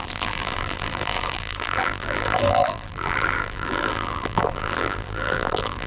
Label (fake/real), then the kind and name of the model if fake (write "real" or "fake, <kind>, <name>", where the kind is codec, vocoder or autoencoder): fake, vocoder, BigVGAN v2